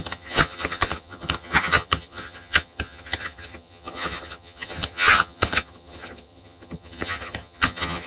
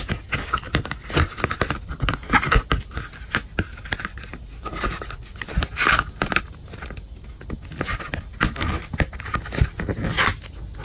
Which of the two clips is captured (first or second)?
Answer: second